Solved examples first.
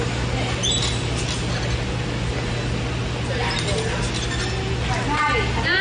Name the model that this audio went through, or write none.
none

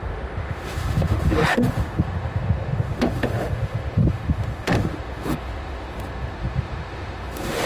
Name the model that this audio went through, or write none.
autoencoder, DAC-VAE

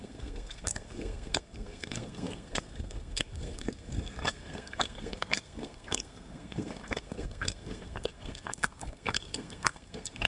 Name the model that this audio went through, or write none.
codec, SNAC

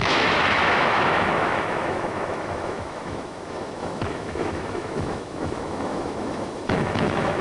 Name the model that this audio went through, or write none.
autoencoder, DAC-VAE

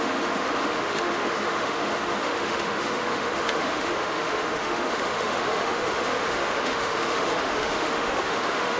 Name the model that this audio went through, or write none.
autoencoder, DAC-VAE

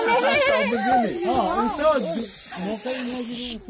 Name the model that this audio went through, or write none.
none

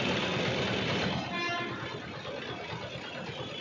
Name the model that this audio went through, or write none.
none